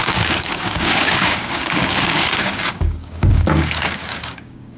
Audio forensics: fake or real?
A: fake